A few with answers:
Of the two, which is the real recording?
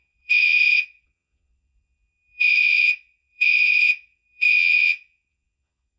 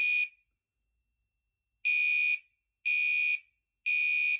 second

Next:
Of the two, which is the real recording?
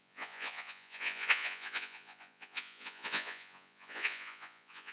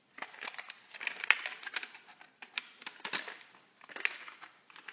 second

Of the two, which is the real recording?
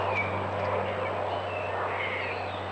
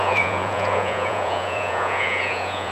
first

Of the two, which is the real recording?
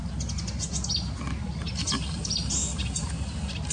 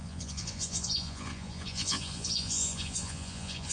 first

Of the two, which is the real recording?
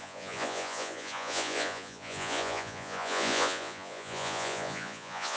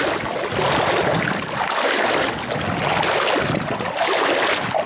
second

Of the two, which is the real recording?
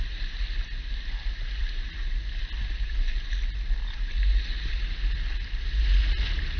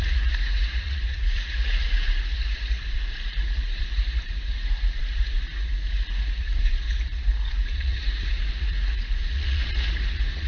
first